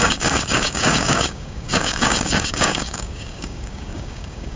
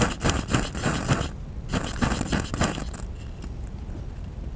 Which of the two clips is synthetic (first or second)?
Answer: first